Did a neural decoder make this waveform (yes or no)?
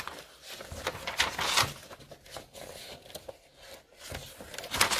no